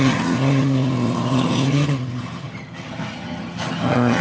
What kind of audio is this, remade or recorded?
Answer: remade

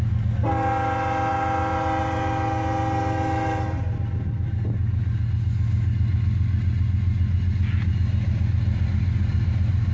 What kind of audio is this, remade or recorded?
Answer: recorded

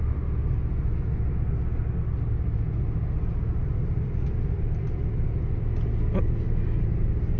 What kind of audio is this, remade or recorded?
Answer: recorded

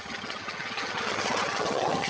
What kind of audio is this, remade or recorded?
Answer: remade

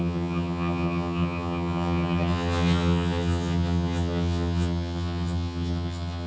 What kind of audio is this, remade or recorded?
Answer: remade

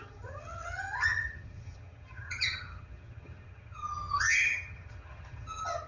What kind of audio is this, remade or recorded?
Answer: remade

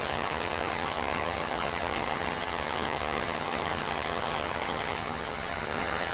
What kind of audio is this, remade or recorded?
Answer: remade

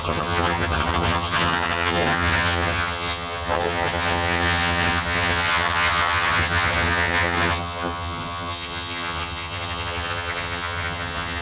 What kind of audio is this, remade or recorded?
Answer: remade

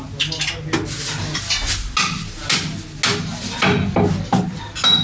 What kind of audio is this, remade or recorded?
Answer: recorded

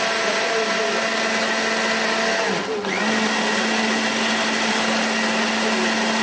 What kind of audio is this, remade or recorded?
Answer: recorded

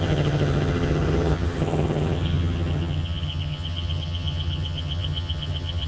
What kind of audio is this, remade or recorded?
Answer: remade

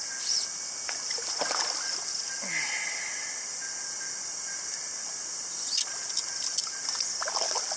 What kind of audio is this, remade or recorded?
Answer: recorded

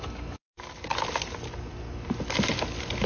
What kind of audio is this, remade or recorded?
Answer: recorded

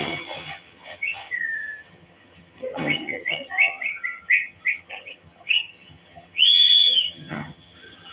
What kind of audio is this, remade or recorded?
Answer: remade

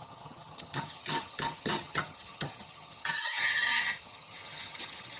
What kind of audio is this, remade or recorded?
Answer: remade